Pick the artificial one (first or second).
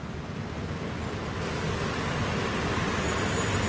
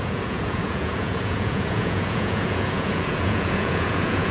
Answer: second